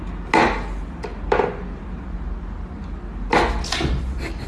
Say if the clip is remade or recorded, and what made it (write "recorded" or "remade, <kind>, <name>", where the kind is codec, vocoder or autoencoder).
recorded